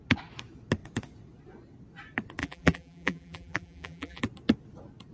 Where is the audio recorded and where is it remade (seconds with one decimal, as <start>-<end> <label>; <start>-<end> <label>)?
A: 0.0-2.4 recorded; 2.4-4.2 remade; 4.2-5.1 recorded